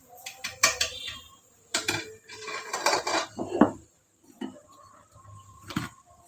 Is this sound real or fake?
fake